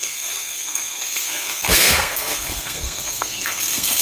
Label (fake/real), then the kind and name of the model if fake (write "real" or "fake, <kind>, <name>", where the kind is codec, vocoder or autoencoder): fake, codec, SNAC